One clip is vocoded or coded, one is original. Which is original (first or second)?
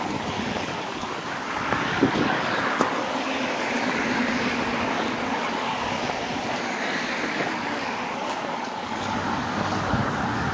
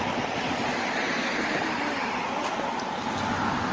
second